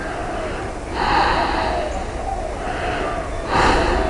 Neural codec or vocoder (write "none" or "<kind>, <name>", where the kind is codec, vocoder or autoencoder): none